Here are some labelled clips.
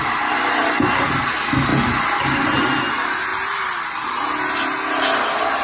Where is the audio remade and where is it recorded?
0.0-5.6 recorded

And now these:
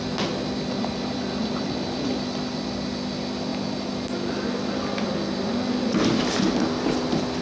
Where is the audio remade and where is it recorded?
0.0-7.4 recorded

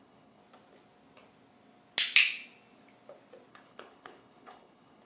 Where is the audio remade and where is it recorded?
0.0-0.4 remade; 0.4-3.5 recorded; 3.5-5.1 remade

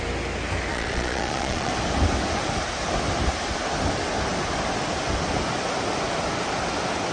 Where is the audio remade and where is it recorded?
0.0-0.7 recorded; 0.7-1.7 remade; 1.7-7.1 recorded